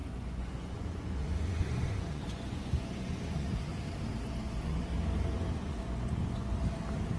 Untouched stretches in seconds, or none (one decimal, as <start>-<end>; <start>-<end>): 3.7-4.3; 4.9-5.6; 6.5-7.2